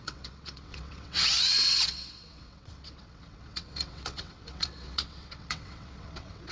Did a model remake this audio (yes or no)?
yes